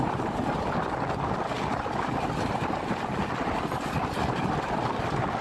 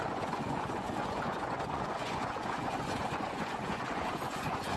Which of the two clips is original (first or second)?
first